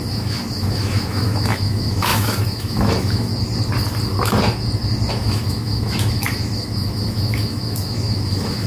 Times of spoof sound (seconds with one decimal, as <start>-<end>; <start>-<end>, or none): 0.0-3.3; 5.1-8.7